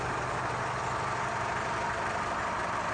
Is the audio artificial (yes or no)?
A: no